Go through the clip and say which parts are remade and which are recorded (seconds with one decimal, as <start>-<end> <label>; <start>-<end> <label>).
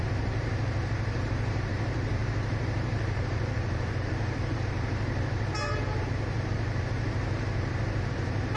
0.0-8.6 remade